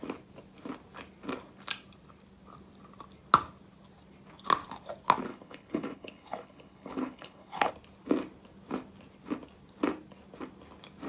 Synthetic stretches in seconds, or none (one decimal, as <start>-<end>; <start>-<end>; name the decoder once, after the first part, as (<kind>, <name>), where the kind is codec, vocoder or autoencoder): 5.3-7.7 (codec, HILCodec)